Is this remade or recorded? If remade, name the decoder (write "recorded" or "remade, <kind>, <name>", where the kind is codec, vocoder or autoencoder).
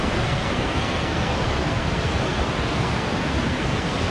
remade, codec, SNAC